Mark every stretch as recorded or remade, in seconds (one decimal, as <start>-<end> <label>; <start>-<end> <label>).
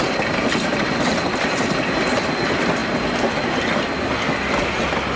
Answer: 0.0-5.2 recorded